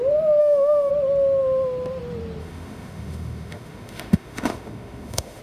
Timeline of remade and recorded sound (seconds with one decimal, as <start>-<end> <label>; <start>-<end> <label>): 0.0-0.4 recorded; 0.4-0.9 remade; 0.9-2.4 recorded; 2.4-5.4 remade